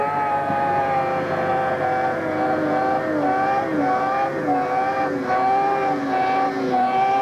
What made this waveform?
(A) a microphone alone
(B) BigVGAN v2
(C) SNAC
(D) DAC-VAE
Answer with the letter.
A